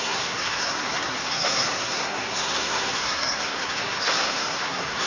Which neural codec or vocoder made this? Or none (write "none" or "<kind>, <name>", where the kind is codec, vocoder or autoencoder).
codec, SNAC